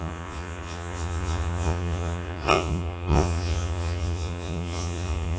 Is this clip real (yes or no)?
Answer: no